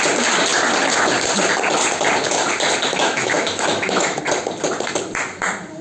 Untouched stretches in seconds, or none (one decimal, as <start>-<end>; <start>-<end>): 0.0-2.9; 4.2-5.8